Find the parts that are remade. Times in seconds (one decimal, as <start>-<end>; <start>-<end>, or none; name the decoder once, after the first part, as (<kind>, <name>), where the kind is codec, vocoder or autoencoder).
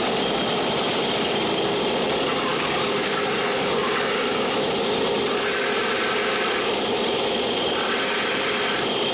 2.5-3.3 (codec, DAC)